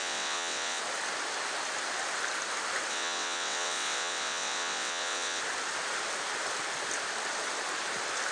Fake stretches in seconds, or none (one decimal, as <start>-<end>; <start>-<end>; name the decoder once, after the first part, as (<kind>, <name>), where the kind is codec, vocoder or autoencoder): 0.0-0.8 (vocoder, WaveNeXt); 2.9-5.4